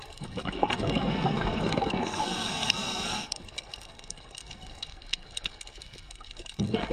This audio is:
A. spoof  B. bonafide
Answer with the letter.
A